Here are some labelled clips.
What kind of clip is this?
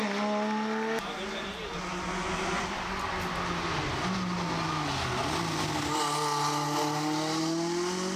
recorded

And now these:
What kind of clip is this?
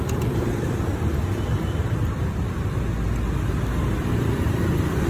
recorded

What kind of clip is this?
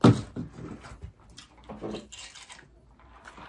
recorded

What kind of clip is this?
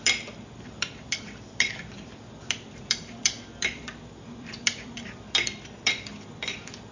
remade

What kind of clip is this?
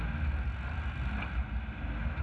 recorded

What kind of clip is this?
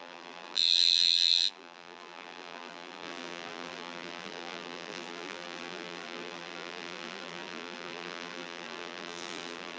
remade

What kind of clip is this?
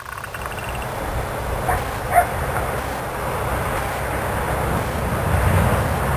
remade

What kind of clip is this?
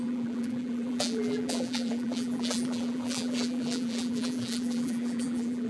remade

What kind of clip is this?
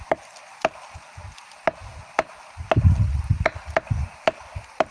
recorded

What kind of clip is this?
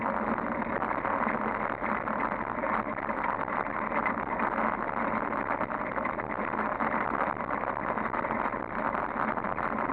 recorded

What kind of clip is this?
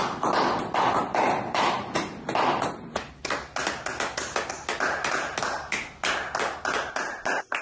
recorded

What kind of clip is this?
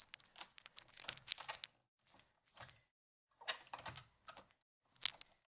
recorded